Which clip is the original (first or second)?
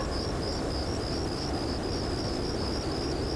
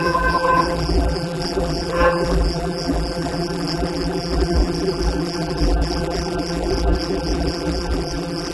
first